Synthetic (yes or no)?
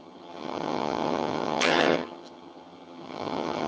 yes